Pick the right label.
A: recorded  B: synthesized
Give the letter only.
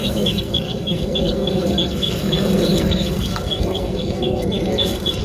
B